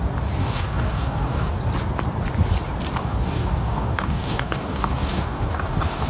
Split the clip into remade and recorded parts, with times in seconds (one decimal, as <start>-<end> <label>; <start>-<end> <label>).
0.0-0.4 recorded; 0.4-1.5 remade; 1.5-3.0 recorded; 3.0-6.1 remade